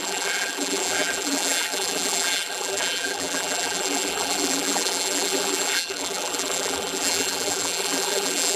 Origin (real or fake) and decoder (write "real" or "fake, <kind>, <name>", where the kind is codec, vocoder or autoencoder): fake, vocoder, BigVGAN v2